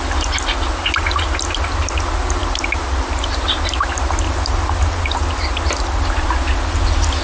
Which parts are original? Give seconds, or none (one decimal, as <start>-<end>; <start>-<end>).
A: 0.0-7.2